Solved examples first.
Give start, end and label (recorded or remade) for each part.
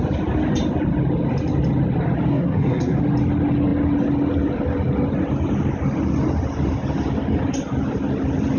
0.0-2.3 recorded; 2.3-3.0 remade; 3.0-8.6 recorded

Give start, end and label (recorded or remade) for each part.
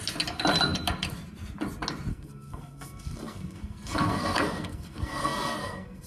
0.0-2.1 recorded; 2.1-6.1 remade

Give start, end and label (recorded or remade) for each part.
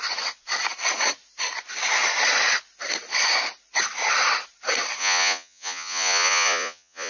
0.0-5.0 recorded; 5.0-7.1 remade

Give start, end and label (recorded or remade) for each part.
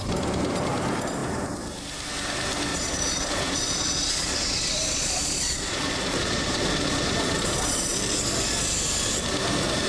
0.0-2.7 recorded; 2.7-8.0 remade; 8.0-9.9 recorded